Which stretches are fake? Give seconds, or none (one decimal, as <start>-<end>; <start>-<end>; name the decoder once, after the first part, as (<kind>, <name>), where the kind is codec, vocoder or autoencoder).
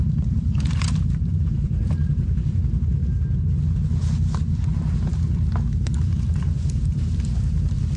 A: 0.0-3.0 (vocoder, BigVGAN v2); 6.0-8.0